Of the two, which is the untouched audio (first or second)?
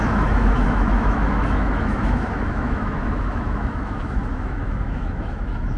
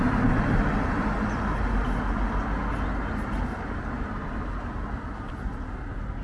second